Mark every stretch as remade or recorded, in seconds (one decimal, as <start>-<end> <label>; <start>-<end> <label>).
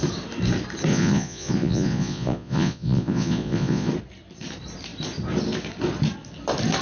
0.0-0.9 recorded; 0.9-3.9 remade; 3.9-6.8 recorded